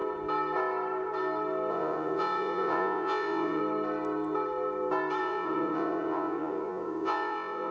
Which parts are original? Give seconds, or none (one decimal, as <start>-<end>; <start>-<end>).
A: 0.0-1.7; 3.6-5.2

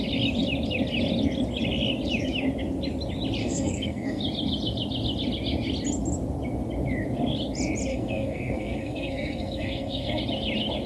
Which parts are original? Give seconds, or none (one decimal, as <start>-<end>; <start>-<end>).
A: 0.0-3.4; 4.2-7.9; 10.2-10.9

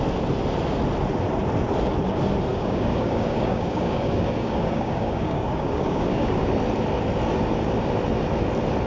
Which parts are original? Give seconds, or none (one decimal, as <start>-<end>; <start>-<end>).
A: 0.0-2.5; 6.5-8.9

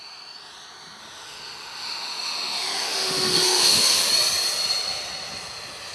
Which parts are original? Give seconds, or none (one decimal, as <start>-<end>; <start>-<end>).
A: 0.0-1.0; 4.1-5.9

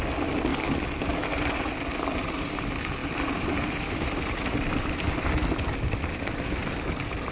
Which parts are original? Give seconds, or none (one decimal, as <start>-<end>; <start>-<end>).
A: 0.0-3.0; 5.9-7.3